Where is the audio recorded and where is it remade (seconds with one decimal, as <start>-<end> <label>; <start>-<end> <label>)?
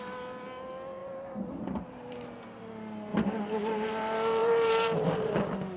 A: 0.0-1.0 recorded; 1.0-2.4 remade; 2.4-3.1 recorded; 3.1-3.9 remade; 3.9-4.4 recorded; 4.4-5.3 remade; 5.3-5.8 recorded